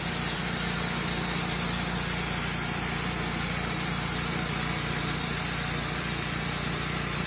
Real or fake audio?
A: real